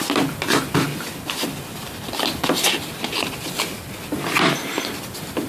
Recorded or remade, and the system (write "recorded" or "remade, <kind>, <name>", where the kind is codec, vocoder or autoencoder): recorded